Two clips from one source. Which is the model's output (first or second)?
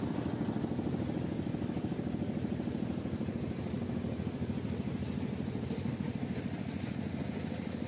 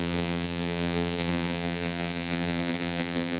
second